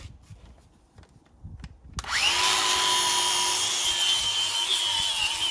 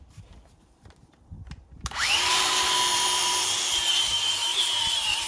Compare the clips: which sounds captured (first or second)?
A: first